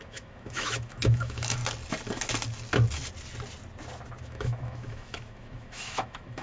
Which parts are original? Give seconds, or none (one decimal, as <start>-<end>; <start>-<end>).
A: 1.6-4.2